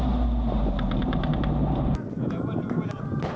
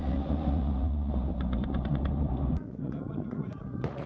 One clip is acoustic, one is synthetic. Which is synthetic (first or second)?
second